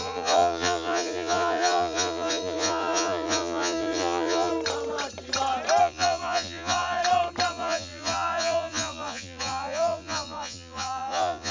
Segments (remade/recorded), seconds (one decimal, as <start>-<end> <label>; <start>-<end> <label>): 0.0-4.5 remade; 4.5-5.8 recorded; 5.8-7.0 remade; 7.0-7.5 recorded; 7.5-11.5 remade